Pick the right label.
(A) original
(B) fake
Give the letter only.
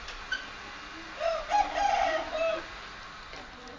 A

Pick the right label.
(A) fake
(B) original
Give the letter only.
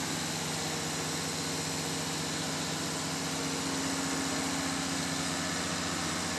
B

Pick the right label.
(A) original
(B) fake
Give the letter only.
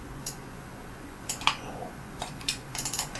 B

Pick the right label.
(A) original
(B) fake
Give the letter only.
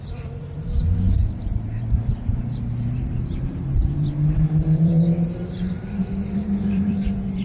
B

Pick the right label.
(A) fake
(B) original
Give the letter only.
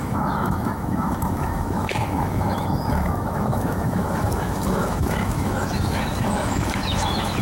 A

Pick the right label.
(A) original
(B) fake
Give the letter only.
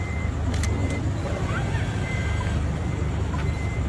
B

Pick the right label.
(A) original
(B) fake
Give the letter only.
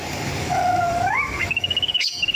B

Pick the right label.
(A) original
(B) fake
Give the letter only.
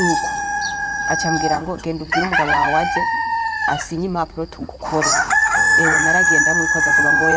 B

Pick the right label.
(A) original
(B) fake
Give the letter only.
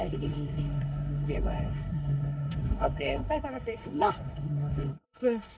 B